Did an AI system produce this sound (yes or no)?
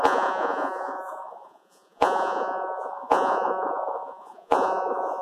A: yes